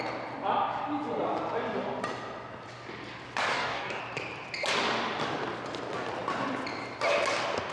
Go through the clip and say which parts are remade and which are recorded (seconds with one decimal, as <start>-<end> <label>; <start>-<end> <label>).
0.0-3.5 recorded; 3.5-4.0 remade; 4.0-7.7 recorded

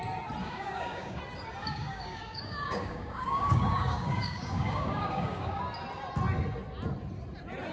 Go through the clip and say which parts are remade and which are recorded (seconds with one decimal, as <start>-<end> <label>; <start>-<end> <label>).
0.0-0.4 recorded; 0.4-1.2 remade; 1.2-1.6 recorded; 1.6-5.6 remade; 5.6-7.7 recorded